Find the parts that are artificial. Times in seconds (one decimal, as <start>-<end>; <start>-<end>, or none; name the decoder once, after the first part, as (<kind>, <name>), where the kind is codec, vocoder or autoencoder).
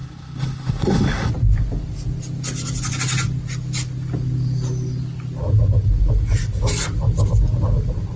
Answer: 0.0-1.3 (codec, HILCodec)